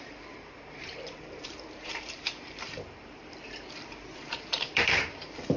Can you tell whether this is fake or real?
fake